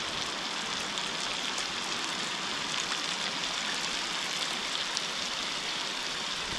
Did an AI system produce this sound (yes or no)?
no